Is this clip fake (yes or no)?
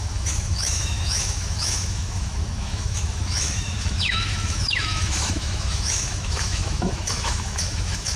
yes